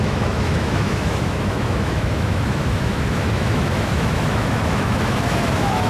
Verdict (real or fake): fake